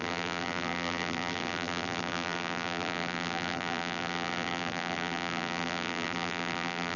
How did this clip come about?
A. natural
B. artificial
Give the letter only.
B